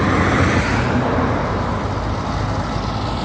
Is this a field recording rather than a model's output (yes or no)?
yes